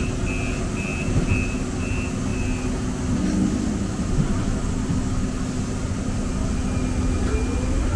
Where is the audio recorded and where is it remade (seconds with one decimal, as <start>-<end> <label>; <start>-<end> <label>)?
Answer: 0.0-8.0 recorded